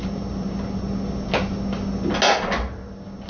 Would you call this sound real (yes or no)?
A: yes